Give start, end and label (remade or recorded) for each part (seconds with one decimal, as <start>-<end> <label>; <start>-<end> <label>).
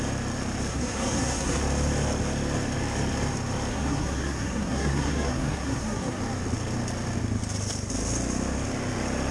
0.0-0.7 recorded; 0.7-1.6 remade; 1.6-3.7 recorded; 3.7-6.2 remade; 6.2-9.3 recorded